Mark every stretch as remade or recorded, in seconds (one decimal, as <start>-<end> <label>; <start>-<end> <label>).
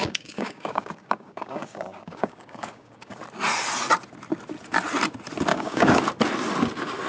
0.0-3.2 remade; 3.2-5.5 recorded; 5.5-6.0 remade; 6.0-7.1 recorded